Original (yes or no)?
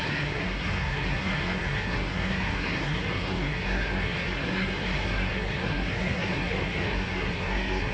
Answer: no